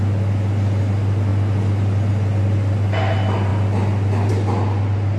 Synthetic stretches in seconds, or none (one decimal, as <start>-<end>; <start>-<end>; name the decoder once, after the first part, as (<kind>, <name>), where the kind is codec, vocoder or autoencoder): none